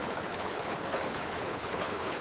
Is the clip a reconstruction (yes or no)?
yes